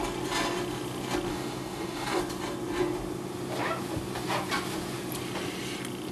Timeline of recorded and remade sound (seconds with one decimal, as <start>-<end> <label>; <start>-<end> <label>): 0.0-1.3 recorded; 1.3-2.2 remade; 2.2-6.1 recorded